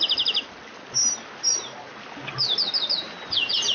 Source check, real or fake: real